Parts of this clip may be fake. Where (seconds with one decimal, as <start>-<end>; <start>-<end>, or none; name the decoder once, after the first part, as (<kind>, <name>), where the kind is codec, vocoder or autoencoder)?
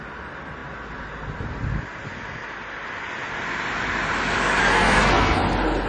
4.6-5.4 (codec, SNAC)